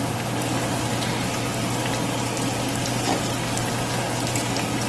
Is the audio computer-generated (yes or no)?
no